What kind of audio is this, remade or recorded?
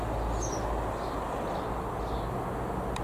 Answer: recorded